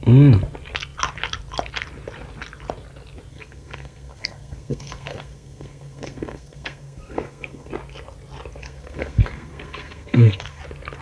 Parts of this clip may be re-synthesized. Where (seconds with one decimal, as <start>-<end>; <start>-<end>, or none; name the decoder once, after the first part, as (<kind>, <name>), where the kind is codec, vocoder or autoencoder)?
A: 3.3-7.7 (codec, SNAC); 8.6-10.6

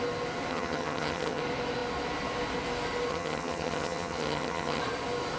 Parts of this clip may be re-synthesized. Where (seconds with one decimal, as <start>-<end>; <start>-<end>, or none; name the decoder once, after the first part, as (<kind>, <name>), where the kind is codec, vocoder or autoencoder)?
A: 0.5-1.4 (vocoder, HiFi-GAN); 3.1-4.8

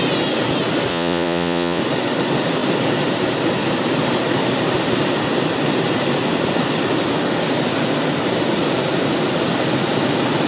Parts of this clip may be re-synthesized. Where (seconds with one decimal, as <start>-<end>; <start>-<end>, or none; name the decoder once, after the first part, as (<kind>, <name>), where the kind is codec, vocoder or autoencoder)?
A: 0.9-1.8 (vocoder, Vocos)